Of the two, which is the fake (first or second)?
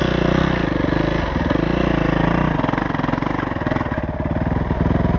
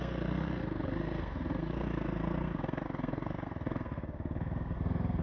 second